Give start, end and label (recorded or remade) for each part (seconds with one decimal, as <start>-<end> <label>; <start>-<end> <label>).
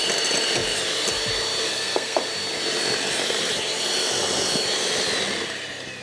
0.0-1.7 recorded; 1.7-2.2 remade; 2.2-6.0 recorded